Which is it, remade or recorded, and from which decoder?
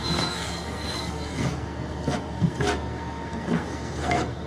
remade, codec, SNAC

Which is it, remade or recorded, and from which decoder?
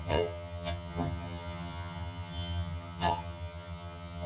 remade, vocoder, HiFi-GAN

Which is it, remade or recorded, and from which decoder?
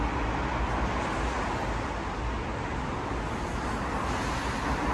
recorded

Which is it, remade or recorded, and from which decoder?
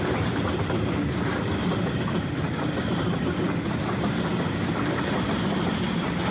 recorded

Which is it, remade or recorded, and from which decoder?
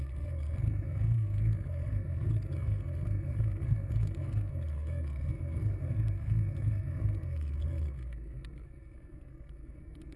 remade, codec, SNAC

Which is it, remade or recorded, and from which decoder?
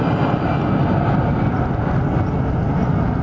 recorded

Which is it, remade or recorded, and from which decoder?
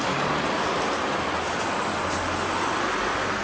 recorded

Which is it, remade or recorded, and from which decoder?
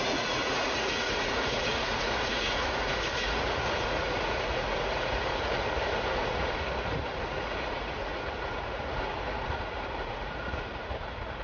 remade, vocoder, Vocos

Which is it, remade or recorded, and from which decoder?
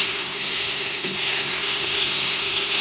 remade, codec, SNAC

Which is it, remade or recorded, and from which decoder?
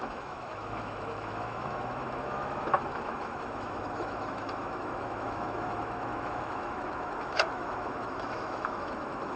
remade, autoencoder, DAC-VAE